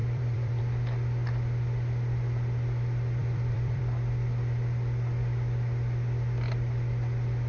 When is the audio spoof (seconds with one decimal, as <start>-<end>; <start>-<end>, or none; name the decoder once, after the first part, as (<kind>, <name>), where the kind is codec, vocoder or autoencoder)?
0.0-0.6 (vocoder, BigVGAN v2); 3.2-3.8